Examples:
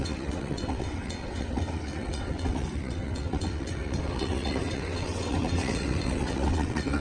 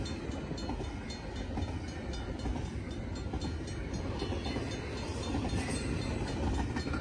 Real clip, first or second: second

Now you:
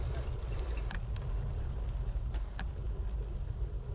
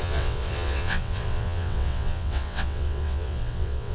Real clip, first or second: first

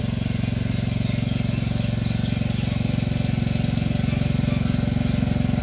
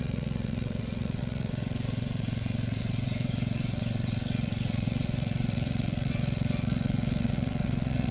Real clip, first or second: first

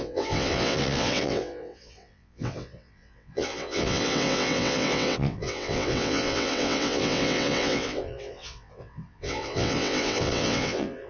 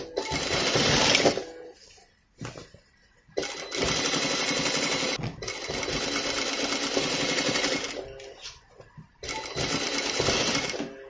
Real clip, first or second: second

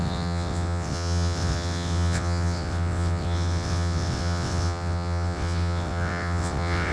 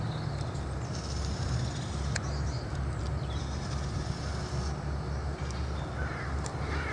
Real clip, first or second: second